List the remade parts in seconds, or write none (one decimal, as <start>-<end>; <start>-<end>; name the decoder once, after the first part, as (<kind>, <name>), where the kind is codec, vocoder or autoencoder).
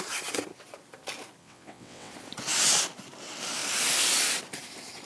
1.4-2.1 (vocoder, WaveNeXt)